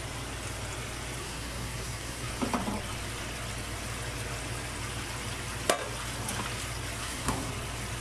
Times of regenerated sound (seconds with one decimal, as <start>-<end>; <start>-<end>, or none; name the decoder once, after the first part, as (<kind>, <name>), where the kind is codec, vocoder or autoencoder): 1.2-2.3 (codec, SNAC); 7.0-7.5